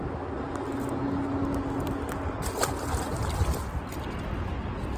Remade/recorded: recorded